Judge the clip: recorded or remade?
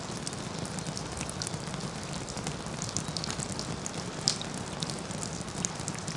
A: recorded